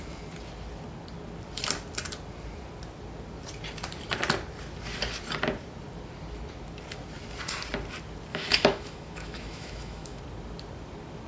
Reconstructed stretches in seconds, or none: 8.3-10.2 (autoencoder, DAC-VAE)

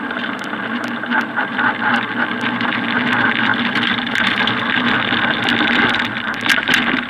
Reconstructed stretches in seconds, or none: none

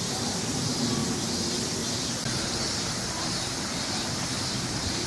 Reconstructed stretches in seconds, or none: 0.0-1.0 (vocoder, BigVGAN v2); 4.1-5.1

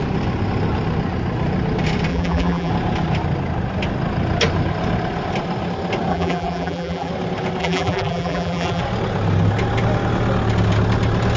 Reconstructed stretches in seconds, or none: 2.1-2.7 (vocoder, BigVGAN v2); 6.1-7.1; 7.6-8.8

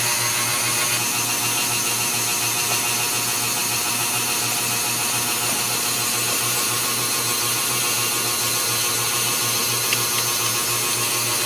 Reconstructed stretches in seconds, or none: 3.6-7.8 (vocoder, BigVGAN v2); 8.9-10.1

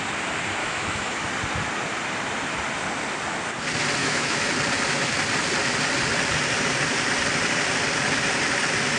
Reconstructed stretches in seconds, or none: 0.6-1.3 (autoencoder, DAC-VAE); 4.0-4.5

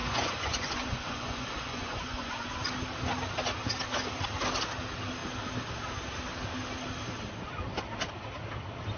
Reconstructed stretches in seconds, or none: 0.0-2.6 (vocoder, Vocos)